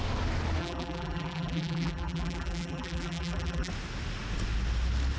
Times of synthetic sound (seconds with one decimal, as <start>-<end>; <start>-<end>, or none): 0.6-3.7